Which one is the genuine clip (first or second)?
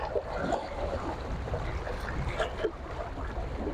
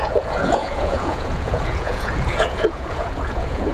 first